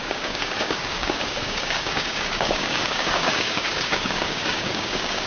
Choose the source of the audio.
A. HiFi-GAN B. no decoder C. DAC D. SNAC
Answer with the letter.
C